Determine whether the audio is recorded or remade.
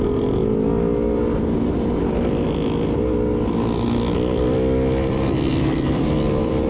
remade